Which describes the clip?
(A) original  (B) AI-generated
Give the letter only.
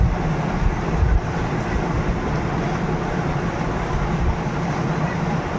A